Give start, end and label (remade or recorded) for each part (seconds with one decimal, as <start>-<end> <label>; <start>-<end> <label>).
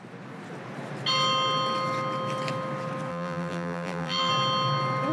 0.0-3.1 recorded; 3.1-4.3 remade; 4.3-5.1 recorded